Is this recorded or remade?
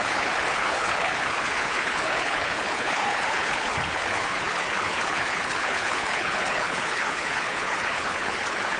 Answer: remade